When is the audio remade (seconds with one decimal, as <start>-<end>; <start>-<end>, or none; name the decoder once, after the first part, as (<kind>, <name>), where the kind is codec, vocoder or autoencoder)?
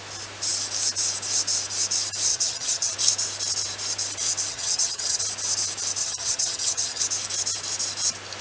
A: 2.3-2.9 (vocoder, HiFi-GAN); 4.5-5.2; 6.0-7.0